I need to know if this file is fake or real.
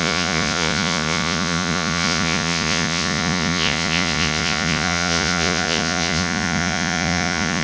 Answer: fake